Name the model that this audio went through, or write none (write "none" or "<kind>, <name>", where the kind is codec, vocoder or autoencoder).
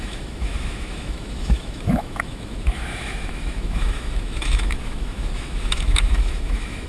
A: autoencoder, DAC-VAE